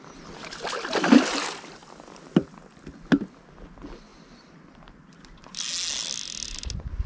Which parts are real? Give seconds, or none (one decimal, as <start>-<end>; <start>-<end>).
0.0-7.1